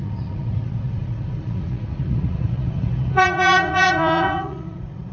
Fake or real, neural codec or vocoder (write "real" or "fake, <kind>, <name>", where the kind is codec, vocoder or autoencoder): fake, vocoder, Vocos